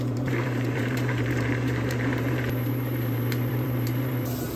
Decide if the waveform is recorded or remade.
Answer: remade